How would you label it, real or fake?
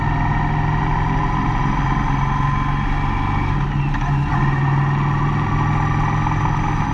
real